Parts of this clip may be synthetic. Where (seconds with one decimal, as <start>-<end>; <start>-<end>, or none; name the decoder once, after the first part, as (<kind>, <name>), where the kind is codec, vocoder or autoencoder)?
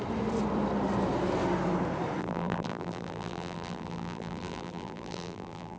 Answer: 2.2-5.8 (vocoder, BigVGAN v2)